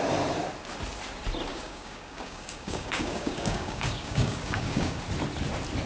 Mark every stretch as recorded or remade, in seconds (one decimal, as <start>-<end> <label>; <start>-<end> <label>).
0.0-1.5 recorded; 1.5-5.0 remade; 5.0-5.9 recorded